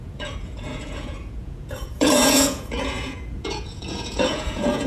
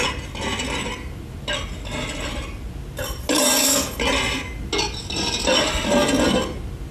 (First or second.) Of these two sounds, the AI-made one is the first